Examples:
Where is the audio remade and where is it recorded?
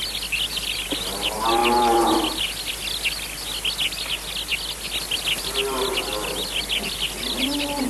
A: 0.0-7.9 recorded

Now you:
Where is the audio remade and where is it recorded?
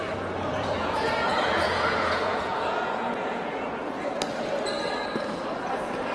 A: 0.0-0.5 recorded; 0.5-4.2 remade; 4.2-6.1 recorded